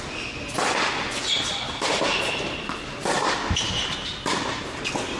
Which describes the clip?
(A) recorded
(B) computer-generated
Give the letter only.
A